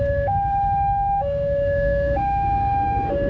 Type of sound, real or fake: fake